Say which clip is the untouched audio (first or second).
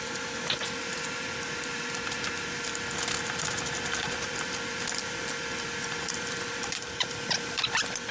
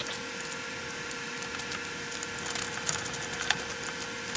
second